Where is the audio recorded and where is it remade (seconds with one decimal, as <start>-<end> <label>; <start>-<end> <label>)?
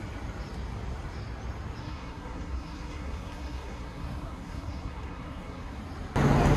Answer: 0.0-1.8 recorded; 1.8-5.8 remade; 5.8-6.6 recorded